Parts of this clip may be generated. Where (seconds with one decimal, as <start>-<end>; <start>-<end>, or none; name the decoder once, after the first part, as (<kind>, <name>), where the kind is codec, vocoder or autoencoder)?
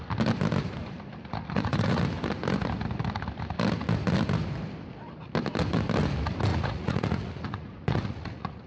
1.4-2.0 (vocoder, Vocos); 6.5-8.7